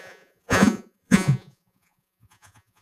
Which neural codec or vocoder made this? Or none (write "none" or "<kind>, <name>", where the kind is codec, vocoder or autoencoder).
vocoder, Vocos